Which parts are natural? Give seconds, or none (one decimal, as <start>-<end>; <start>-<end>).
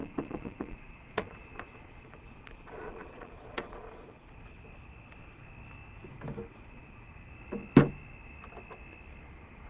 4.3-6.5; 7.1-9.7